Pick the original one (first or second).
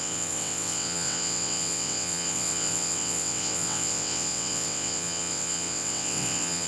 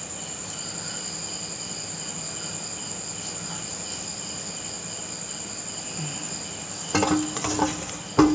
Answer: second